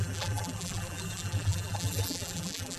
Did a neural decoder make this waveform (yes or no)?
yes